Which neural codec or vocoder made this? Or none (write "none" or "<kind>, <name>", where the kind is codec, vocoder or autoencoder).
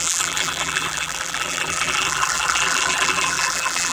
vocoder, BigVGAN v2